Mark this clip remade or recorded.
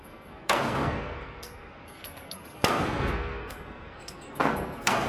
remade